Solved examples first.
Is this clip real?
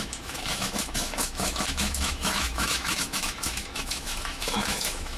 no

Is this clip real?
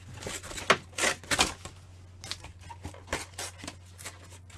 yes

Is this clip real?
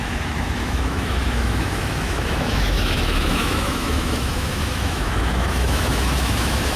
no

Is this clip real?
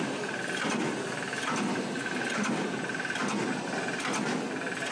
yes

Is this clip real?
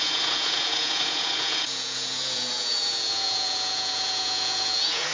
no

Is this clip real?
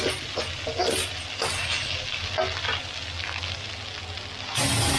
yes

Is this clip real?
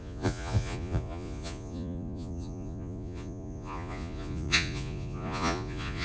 no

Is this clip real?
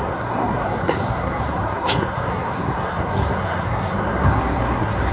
no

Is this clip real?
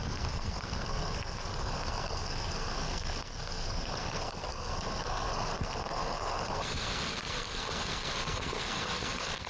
no